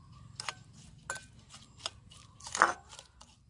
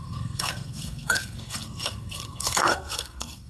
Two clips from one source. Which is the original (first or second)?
first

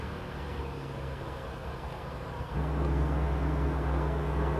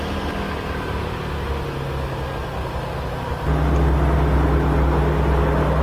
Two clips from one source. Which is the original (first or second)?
second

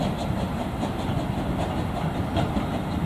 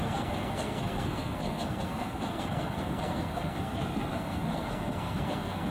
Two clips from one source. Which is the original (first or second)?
first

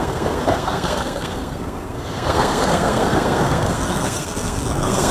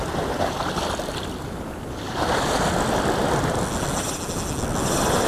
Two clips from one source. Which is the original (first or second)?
second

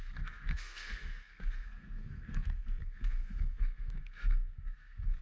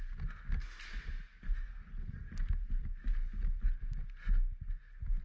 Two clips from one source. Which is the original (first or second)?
second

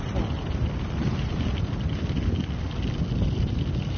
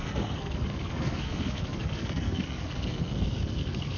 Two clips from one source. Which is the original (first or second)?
first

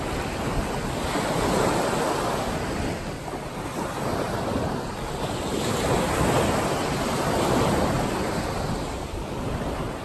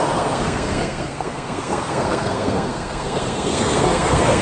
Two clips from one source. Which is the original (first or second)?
first